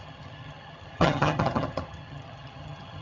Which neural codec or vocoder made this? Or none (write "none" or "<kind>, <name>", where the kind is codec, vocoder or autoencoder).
vocoder, HiFi-GAN